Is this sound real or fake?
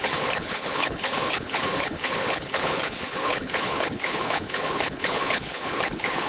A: fake